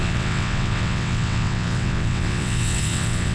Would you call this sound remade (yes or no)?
yes